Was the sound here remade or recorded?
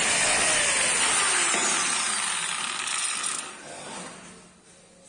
recorded